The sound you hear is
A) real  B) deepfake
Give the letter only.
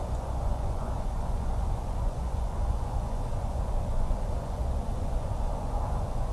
B